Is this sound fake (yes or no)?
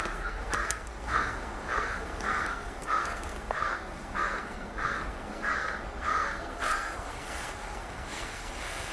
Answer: yes